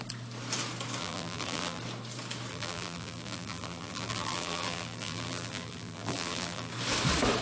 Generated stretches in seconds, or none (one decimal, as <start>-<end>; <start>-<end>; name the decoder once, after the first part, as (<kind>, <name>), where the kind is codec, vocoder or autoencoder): 1.0-1.8 (vocoder, BigVGAN v2); 2.5-6.7